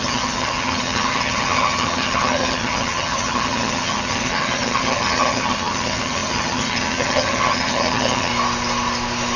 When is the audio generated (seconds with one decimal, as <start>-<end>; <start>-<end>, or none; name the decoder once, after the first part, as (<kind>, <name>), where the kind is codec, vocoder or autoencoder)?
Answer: 0.0-8.3 (vocoder, HiFi-GAN)